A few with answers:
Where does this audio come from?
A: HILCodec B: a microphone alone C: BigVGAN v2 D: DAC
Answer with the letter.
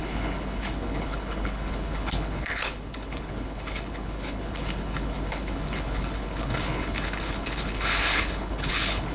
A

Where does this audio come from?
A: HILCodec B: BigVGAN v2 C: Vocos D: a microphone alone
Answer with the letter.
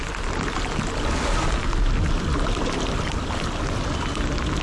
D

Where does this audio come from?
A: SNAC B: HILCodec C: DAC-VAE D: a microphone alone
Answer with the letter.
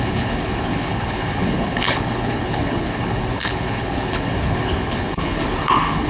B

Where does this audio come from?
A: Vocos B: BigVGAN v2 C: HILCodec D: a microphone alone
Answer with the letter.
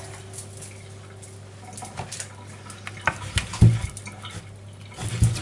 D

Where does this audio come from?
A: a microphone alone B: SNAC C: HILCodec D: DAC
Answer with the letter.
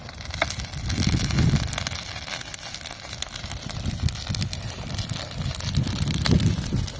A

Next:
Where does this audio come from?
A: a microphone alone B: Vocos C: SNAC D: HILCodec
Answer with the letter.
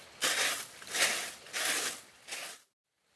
A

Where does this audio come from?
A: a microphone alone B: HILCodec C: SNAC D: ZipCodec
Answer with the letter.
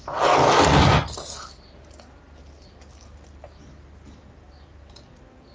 A